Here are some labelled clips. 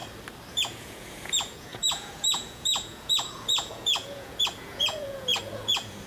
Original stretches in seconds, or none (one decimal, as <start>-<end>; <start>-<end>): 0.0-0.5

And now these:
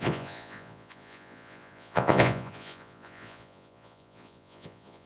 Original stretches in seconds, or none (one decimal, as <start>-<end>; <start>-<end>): none

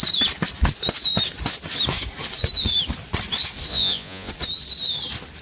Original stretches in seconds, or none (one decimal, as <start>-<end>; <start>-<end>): 0.0-3.7; 4.3-5.4

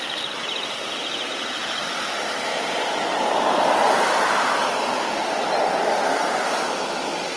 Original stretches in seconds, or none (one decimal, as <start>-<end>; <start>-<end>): 0.0-7.4

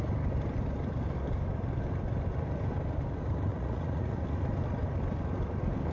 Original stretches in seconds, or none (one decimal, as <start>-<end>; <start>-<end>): 0.0-3.5; 4.2-5.9